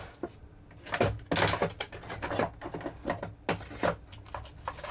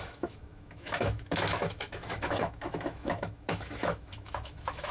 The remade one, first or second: second